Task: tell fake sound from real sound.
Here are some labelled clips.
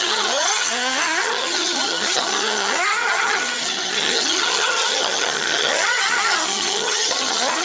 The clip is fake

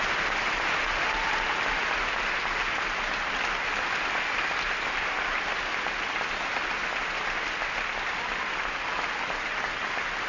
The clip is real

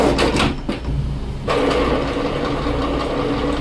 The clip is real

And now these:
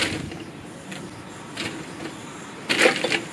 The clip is real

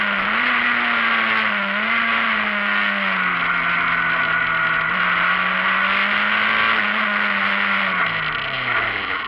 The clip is real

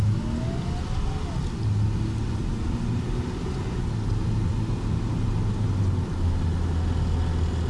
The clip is real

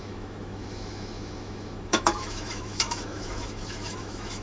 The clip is fake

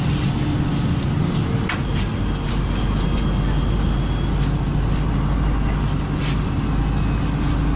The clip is real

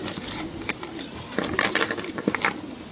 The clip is real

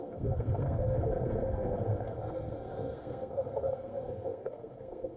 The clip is fake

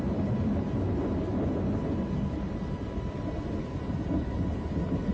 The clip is real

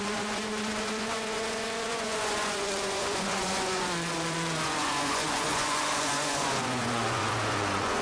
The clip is fake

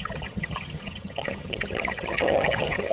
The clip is fake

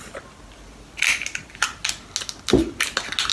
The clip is real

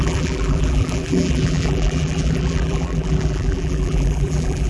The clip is fake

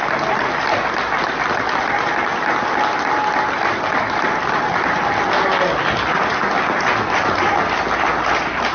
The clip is real